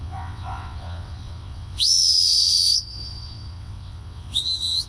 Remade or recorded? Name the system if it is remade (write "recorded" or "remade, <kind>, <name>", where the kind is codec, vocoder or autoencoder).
remade, vocoder, WaveNeXt